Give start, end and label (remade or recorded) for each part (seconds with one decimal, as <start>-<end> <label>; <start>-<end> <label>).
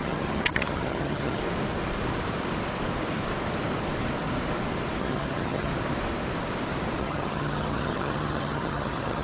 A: 0.0-1.4 remade; 1.4-5.0 recorded; 5.0-5.7 remade; 5.7-7.0 recorded; 7.0-9.2 remade